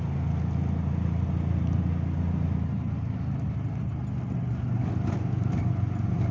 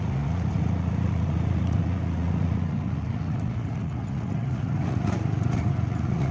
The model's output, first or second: second